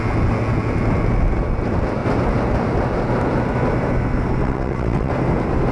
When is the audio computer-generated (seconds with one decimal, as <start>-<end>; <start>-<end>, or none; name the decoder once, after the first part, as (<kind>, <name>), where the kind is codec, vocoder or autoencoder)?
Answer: 4.4-5.1 (vocoder, WaveNeXt)